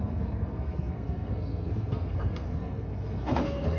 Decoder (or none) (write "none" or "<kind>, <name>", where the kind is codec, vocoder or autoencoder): codec, SNAC